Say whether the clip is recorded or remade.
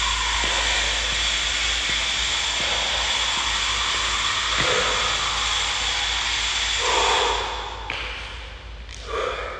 recorded